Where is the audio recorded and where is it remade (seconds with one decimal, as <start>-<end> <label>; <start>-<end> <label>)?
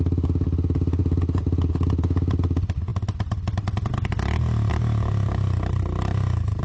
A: 0.0-6.6 recorded